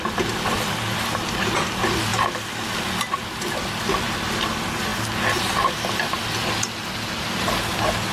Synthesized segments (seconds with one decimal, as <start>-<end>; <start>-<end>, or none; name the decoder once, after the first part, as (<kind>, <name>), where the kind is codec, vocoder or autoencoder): none